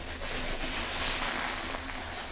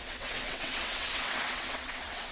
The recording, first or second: first